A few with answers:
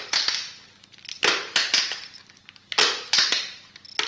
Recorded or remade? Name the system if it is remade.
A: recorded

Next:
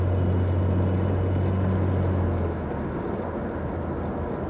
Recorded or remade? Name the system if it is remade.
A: recorded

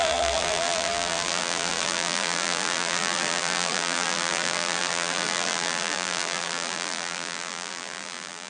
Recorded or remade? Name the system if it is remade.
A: remade, vocoder, BigVGAN v2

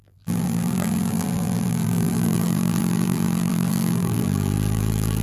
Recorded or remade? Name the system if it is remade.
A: remade, vocoder, BigVGAN v2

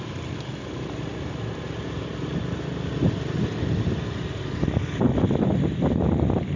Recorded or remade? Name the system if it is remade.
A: recorded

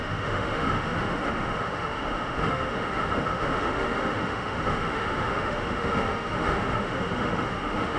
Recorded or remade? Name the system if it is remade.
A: remade, autoencoder, DAC-VAE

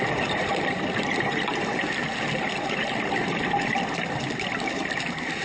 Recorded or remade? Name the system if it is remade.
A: recorded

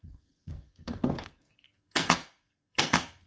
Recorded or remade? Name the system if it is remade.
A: remade, codec, SNAC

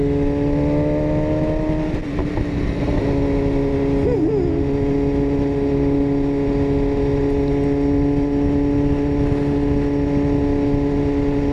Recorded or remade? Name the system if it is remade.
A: recorded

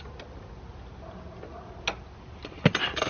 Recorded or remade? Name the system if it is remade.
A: recorded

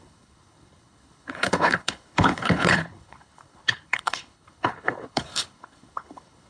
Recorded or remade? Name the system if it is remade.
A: remade, codec, HILCodec